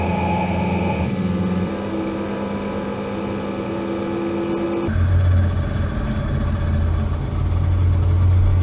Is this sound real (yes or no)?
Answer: yes